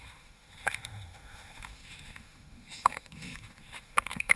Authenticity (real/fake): fake